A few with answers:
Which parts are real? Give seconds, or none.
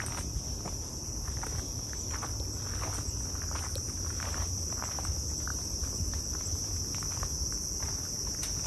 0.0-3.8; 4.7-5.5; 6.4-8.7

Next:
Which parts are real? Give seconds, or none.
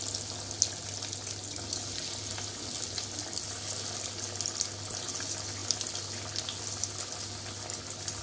0.0-8.2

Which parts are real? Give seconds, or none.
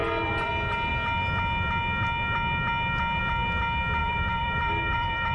0.5-4.0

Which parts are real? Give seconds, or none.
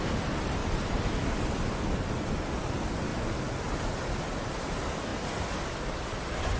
0.0-0.6; 2.5-3.1; 3.8-5.1; 5.7-6.6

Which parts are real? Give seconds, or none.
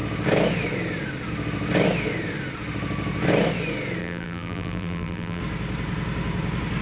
0.0-4.0; 5.4-6.8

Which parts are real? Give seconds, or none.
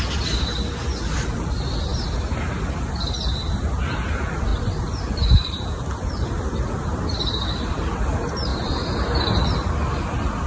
0.0-4.5; 8.0-8.5; 9.7-10.5